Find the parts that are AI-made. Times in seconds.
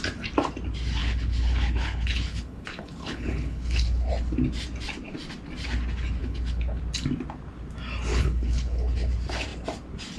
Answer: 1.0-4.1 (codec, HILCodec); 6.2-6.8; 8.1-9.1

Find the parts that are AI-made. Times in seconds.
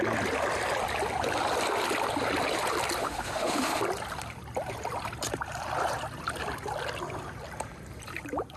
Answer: 3.0-3.8 (autoencoder, DAC-VAE)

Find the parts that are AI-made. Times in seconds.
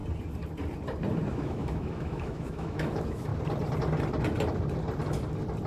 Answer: 1.3-3.3 (autoencoder, DAC-VAE)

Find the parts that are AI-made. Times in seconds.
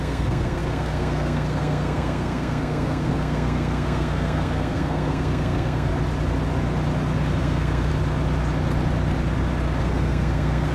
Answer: 0.0-5.9 (codec, SNAC); 7.4-7.9; 9.8-10.7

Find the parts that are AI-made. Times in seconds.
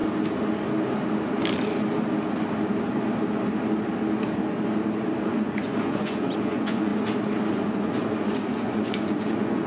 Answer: 5.3-6.9 (vocoder, Vocos); 7.5-9.7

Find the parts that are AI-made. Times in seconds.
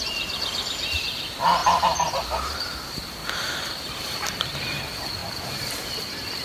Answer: 1.6-2.1 (vocoder, BigVGAN v2); 3.2-4.8; 5.2-6.0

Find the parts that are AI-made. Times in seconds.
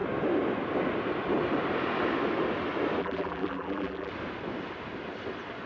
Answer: 3.0-4.1 (vocoder, BigVGAN v2)